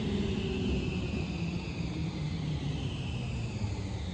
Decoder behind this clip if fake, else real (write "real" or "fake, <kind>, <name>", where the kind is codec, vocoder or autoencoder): real